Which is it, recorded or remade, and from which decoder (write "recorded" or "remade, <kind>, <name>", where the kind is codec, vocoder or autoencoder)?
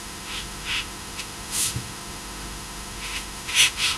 remade, autoencoder, DAC-VAE